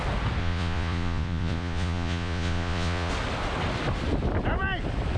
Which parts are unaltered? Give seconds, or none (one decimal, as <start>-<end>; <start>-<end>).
0.0-0.4; 3.1-5.2